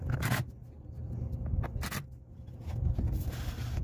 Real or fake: real